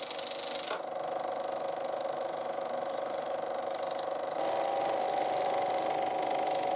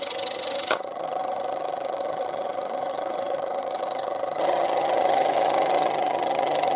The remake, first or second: second